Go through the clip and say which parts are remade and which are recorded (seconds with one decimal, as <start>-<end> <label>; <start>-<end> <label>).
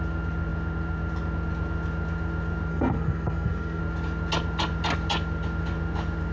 0.0-2.7 recorded; 2.7-3.8 remade; 3.8-6.3 recorded